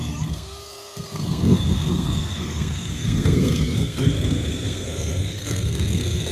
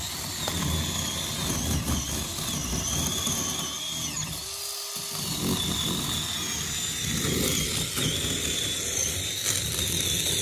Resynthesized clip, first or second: first